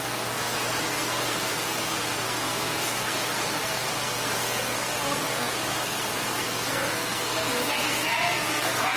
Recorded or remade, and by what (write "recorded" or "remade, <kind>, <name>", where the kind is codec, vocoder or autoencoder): remade, codec, SNAC